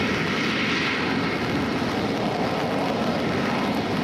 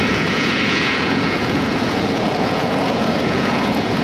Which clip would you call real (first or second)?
first